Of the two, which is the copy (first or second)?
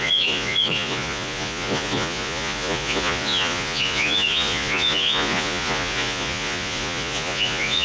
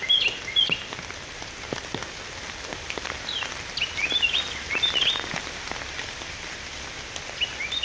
first